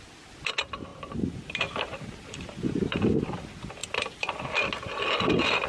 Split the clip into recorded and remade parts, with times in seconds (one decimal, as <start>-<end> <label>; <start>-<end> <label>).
0.0-0.9 recorded; 0.9-2.0 remade; 2.0-3.8 recorded; 3.8-4.4 remade; 4.4-5.7 recorded